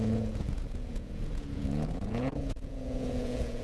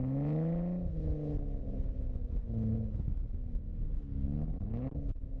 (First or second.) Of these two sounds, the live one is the second